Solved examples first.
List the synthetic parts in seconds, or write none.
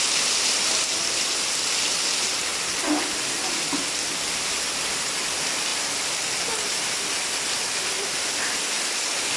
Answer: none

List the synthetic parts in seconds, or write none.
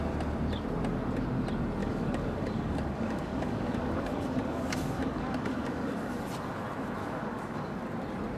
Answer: 1.8-6.2 (codec, DAC); 7.0-7.8